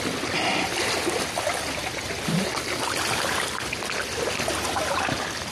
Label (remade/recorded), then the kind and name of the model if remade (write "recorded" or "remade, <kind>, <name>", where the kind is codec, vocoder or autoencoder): recorded